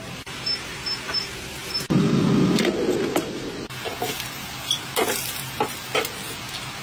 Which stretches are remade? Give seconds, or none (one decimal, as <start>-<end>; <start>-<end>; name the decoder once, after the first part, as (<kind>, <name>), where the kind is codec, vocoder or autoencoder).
none